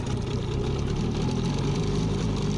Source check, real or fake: real